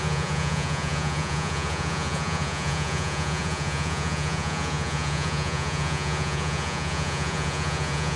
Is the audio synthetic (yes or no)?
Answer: yes